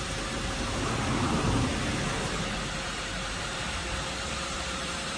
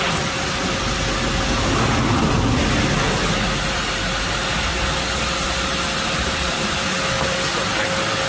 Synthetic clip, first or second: first